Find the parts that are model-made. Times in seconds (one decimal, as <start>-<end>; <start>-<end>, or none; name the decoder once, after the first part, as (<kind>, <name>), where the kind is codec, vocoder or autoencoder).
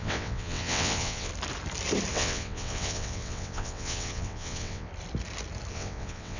0.0-1.3 (vocoder, WaveNeXt); 2.1-4.9; 5.7-6.4